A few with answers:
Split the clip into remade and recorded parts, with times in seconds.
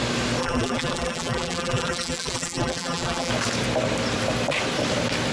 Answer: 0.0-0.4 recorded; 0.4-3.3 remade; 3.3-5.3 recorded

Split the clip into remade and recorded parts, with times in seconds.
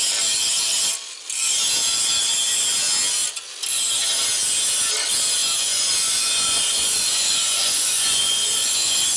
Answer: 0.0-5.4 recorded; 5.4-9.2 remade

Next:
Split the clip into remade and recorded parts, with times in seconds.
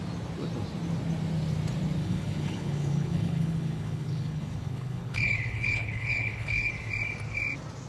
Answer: 0.0-2.0 recorded; 2.0-6.7 remade; 6.7-7.9 recorded